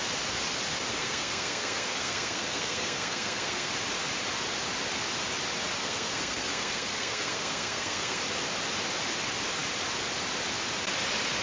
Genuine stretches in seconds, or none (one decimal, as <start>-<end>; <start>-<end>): 0.0-0.9; 3.7-5.8; 8.2-11.4